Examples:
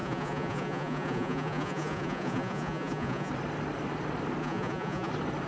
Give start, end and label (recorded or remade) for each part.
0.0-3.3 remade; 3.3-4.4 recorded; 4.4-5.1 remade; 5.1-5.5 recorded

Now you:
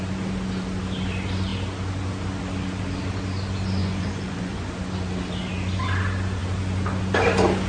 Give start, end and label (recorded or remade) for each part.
0.0-3.8 recorded; 3.8-4.7 remade; 4.7-7.7 recorded

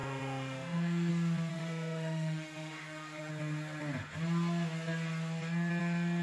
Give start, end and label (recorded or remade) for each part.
0.0-1.1 remade; 1.1-1.5 recorded; 1.5-3.3 remade; 3.3-6.2 recorded

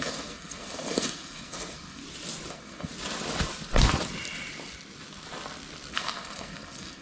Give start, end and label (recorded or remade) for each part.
0.0-2.0 remade; 2.0-2.5 recorded; 2.5-2.9 remade; 2.9-5.9 recorded; 5.9-7.0 remade

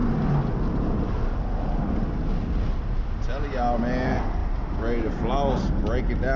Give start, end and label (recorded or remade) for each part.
0.0-6.4 recorded

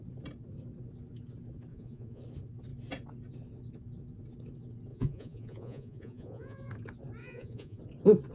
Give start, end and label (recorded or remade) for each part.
0.0-1.7 recorded; 1.7-2.2 remade; 2.2-4.9 recorded; 4.9-6.7 remade; 6.7-7.2 recorded; 7.2-7.8 remade; 7.8-8.3 recorded

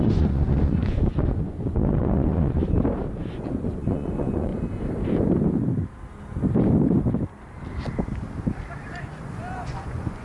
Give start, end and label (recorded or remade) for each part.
0.0-2.6 remade; 2.6-3.2 recorded; 3.2-4.5 remade; 4.5-8.9 recorded; 8.9-10.2 remade

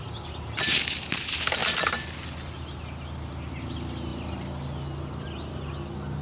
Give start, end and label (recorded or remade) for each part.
0.0-6.2 recorded